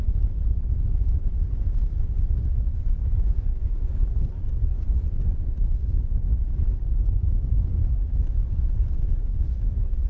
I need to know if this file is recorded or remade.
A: recorded